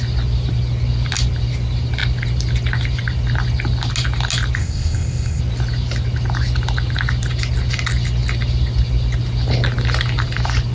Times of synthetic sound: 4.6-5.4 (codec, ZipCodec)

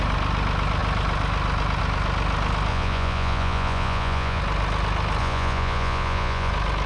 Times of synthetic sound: 2.7-4.4 (vocoder, Vocos); 5.2-6.5

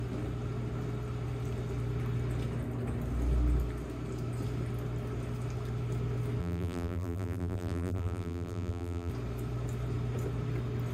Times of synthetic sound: 6.4-9.1 (vocoder, BigVGAN v2)